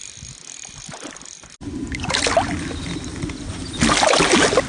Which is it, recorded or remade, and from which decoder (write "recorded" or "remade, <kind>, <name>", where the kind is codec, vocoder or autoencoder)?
recorded